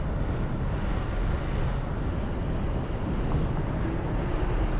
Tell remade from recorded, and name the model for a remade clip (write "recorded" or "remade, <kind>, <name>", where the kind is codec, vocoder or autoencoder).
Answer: recorded